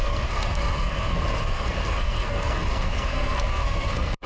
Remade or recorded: remade